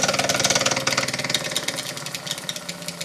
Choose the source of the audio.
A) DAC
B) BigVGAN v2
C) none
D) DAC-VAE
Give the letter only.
C